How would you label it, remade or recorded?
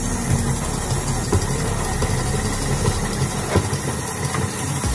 recorded